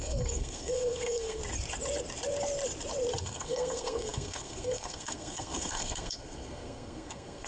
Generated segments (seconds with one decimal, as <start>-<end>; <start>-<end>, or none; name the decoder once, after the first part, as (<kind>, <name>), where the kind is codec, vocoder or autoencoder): 0.0-1.4 (codec, SNAC); 3.2-7.5